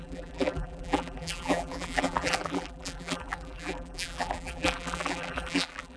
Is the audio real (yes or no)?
no